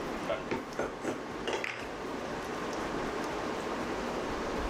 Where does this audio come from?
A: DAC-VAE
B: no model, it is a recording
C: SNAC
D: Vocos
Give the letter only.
B